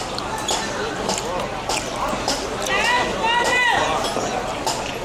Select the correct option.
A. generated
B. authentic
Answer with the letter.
B